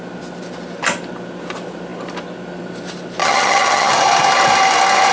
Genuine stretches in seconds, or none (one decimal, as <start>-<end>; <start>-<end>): 0.0-3.2; 3.9-5.1